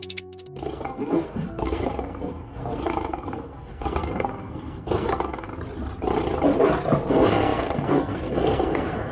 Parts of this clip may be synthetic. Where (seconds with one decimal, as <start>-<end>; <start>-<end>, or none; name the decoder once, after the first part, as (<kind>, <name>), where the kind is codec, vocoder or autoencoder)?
0.0-5.5 (codec, SNAC); 7.1-9.1